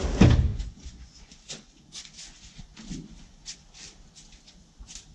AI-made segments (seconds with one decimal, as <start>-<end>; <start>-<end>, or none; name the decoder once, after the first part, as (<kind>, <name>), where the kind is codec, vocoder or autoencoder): 0.5-3.6 (vocoder, Vocos)